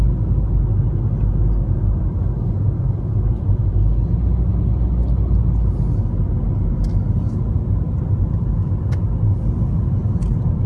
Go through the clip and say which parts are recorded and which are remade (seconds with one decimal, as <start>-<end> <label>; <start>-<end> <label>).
0.0-10.7 recorded

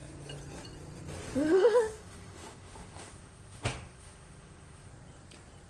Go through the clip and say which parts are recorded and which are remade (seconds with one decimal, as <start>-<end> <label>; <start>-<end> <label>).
0.0-1.5 recorded; 1.5-4.9 remade; 4.9-5.7 recorded

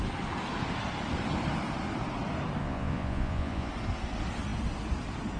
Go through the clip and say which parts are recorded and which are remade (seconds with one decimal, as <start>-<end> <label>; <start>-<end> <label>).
0.0-2.6 recorded; 2.6-3.7 remade; 3.7-5.4 recorded

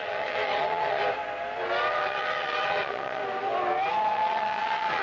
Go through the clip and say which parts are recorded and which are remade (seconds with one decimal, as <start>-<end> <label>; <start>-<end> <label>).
0.0-1.0 remade; 1.0-1.9 recorded; 1.9-3.2 remade; 3.2-3.9 recorded; 3.9-5.0 remade

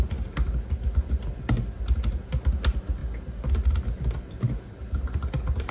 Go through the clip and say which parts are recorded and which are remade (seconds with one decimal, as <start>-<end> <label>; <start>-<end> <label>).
0.0-5.7 recorded

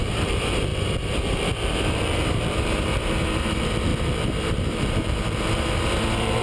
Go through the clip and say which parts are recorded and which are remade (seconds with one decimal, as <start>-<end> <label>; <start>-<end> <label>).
0.0-6.4 remade

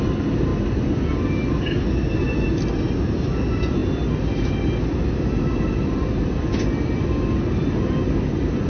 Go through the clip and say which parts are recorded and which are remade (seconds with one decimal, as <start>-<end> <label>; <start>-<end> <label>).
0.0-8.7 recorded

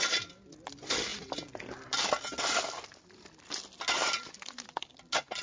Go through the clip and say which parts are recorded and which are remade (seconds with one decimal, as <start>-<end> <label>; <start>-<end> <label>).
0.0-5.4 recorded